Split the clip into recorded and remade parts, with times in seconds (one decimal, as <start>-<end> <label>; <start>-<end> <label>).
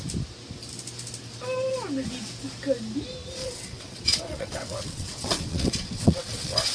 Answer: 0.0-3.4 recorded; 3.4-6.7 remade